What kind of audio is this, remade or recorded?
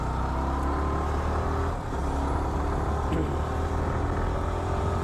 recorded